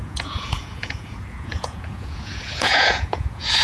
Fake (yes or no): yes